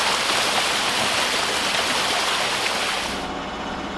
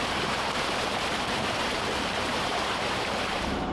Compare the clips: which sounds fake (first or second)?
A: second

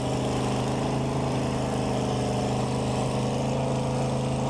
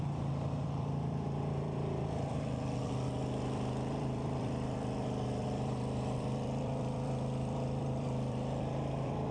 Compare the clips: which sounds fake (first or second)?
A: second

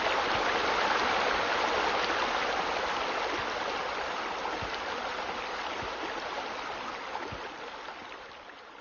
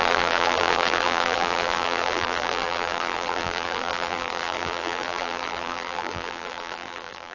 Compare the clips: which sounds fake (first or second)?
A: second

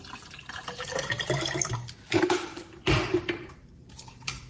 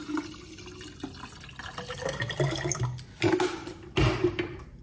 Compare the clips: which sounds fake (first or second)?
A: first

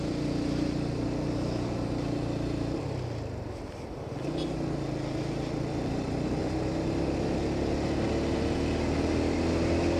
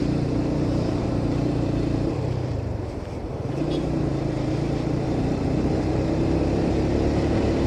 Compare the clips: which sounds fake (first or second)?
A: second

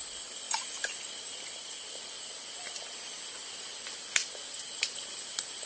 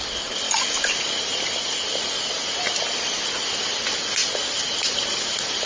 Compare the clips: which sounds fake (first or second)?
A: first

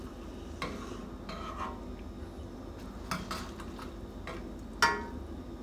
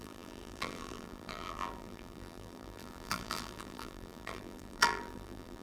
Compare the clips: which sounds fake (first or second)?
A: second